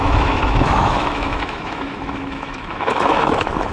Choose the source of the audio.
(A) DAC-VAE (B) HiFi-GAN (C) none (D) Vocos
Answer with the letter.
A